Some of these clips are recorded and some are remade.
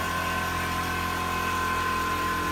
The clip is recorded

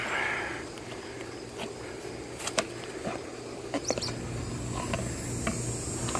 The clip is remade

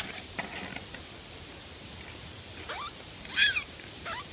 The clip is recorded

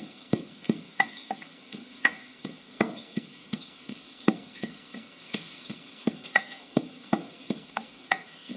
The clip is remade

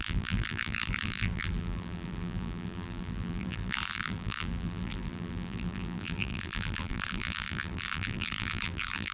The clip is remade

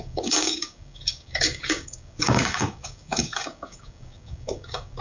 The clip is remade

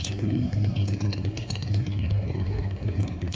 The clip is remade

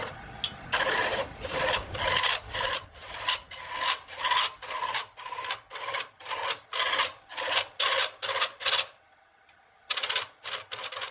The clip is recorded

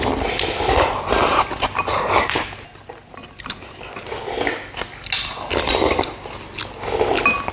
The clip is recorded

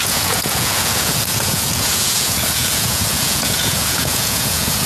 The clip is remade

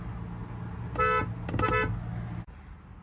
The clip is recorded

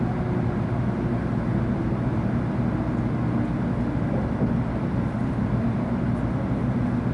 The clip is recorded